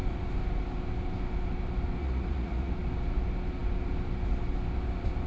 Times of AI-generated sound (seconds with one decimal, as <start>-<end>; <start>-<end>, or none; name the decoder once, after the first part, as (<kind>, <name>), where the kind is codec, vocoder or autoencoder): 2.0-2.7 (vocoder, Vocos)